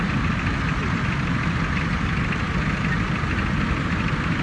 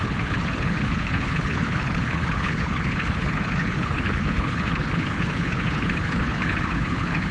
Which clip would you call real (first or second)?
first